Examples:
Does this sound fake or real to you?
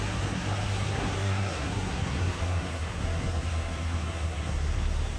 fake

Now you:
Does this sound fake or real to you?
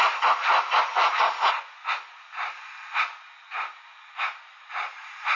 real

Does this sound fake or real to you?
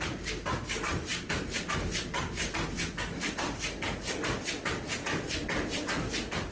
real